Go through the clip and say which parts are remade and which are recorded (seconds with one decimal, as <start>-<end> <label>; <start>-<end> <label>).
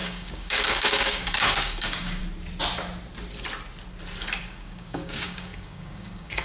0.0-2.2 remade; 2.2-4.4 recorded; 4.4-6.4 remade